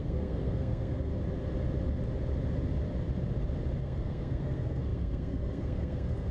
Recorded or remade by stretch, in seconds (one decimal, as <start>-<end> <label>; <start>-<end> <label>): 0.0-1.1 remade; 1.1-3.8 recorded; 3.8-6.3 remade